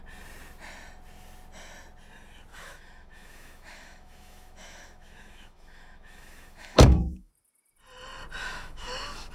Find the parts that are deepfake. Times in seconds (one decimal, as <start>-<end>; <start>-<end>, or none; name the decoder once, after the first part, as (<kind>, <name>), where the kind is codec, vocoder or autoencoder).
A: 2.5-7.3 (autoencoder, DAC-VAE); 8.4-9.3